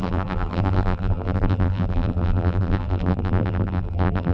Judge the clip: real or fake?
fake